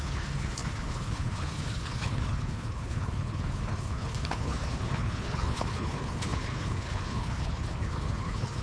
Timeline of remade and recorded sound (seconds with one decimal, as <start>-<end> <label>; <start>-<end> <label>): 0.0-8.6 remade